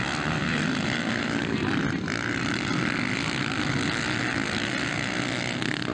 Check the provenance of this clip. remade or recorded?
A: recorded